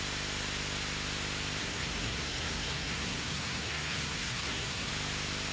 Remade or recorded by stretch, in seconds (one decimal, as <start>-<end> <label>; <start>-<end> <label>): 0.0-1.6 recorded; 1.6-4.9 remade; 4.9-5.5 recorded